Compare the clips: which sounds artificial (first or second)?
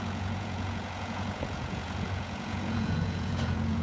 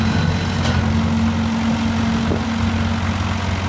first